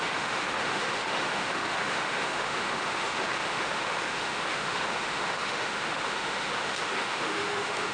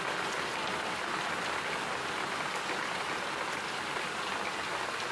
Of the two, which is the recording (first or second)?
second